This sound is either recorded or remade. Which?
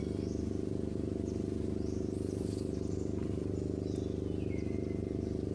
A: recorded